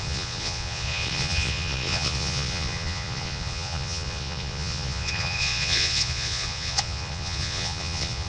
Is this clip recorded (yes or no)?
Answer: no